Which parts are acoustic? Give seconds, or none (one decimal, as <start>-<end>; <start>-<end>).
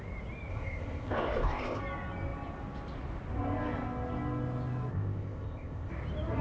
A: 0.0-0.5; 1.8-4.9; 5.9-6.4